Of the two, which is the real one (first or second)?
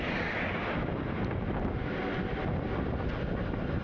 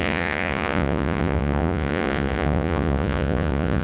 first